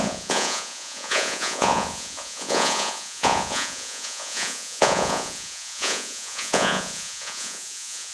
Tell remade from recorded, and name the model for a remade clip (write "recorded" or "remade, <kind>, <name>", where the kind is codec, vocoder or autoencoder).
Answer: remade, vocoder, Vocos